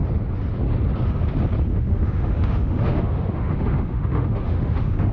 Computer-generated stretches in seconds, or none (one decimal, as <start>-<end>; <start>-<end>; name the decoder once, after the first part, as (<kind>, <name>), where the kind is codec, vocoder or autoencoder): 1.7-5.1 (autoencoder, DAC-VAE)